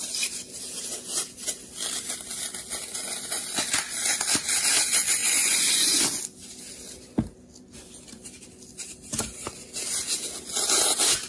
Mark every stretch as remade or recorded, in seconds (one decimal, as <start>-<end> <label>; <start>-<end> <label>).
0.0-2.9 recorded; 2.9-3.7 remade; 3.7-5.2 recorded; 5.2-6.2 remade; 6.2-11.3 recorded